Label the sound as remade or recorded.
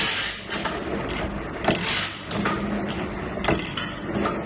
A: recorded